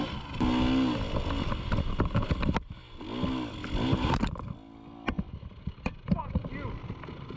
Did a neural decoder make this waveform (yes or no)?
no